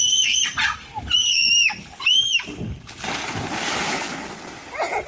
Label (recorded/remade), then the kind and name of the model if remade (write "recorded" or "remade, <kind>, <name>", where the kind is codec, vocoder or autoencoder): recorded